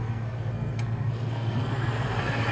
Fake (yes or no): yes